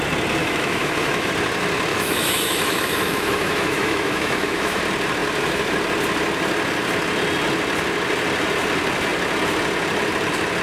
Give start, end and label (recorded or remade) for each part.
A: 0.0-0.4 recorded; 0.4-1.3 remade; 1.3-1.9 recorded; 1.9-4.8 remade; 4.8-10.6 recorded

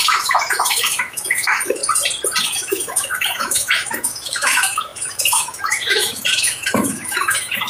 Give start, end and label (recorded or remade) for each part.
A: 0.0-1.8 remade; 1.8-2.4 recorded; 2.4-7.7 remade

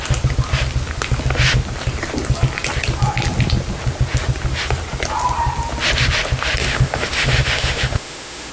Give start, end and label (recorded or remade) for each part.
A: 0.0-6.6 recorded; 6.6-8.5 remade

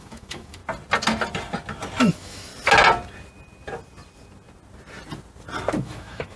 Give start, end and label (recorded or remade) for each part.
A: 0.0-0.6 remade; 0.6-2.1 recorded; 2.1-2.5 remade; 2.5-5.8 recorded; 5.8-6.4 remade

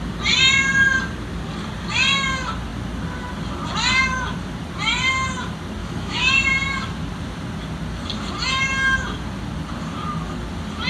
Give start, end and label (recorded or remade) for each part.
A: 0.0-5.8 recorded; 5.8-6.3 remade; 6.3-10.9 recorded